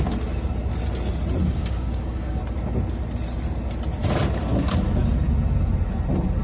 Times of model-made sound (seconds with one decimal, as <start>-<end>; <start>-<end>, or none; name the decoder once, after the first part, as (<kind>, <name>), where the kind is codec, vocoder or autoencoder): 1.4-2.4 (codec, DAC)